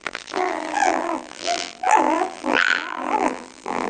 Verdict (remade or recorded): remade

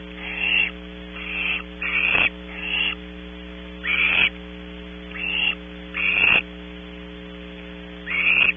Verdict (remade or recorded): recorded